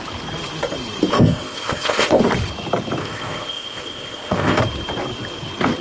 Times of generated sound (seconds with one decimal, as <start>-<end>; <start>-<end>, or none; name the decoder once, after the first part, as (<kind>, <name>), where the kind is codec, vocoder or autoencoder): 1.1-2.2 (codec, ZipCodec); 3.0-4.6